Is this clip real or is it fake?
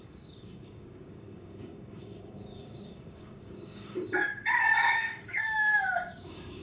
fake